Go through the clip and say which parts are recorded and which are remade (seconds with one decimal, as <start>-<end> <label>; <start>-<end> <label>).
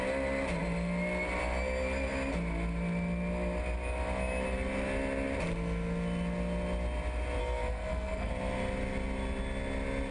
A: 0.0-7.4 recorded; 7.4-8.3 remade; 8.3-10.1 recorded